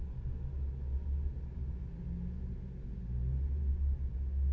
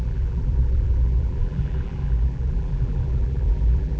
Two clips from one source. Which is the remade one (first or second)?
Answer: second